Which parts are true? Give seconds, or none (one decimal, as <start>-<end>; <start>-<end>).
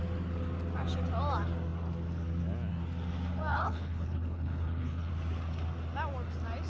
0.0-3.5; 5.1-6.7